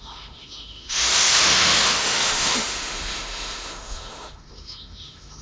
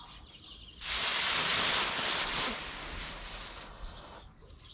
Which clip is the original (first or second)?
second